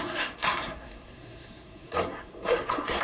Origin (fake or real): fake